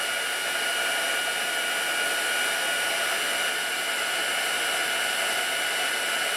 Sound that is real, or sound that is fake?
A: real